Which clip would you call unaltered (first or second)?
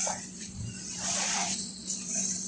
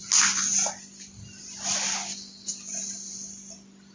second